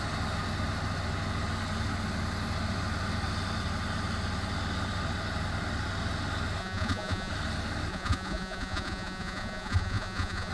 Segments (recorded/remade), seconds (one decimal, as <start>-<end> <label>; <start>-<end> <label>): 0.0-6.6 recorded; 6.6-7.3 remade; 7.3-7.9 recorded; 7.9-10.5 remade